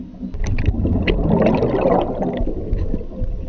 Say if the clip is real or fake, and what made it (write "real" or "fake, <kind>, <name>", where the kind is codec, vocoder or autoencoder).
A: real